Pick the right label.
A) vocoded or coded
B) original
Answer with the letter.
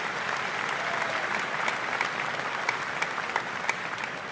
B